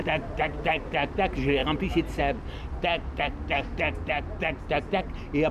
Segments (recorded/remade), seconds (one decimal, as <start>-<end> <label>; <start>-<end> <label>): 0.0-5.5 recorded